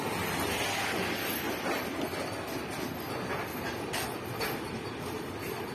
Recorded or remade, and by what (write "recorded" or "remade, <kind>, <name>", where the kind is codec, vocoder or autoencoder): recorded